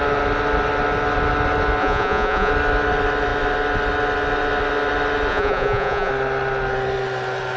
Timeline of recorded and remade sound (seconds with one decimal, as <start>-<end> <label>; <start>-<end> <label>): 0.0-1.8 recorded; 1.8-2.5 remade; 2.5-5.3 recorded; 5.3-6.1 remade; 6.1-7.6 recorded